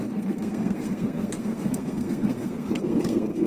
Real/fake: fake